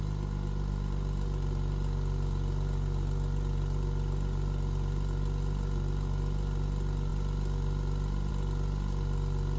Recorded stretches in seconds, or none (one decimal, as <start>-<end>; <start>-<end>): 0.0-9.6